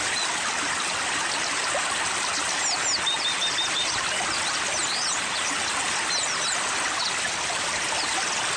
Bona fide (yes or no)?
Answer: yes